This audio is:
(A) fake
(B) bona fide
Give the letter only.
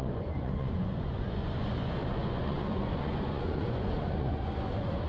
A